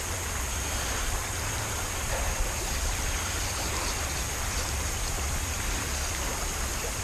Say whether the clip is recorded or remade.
recorded